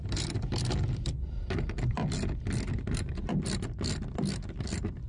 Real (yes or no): yes